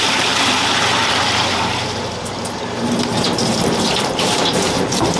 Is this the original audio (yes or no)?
no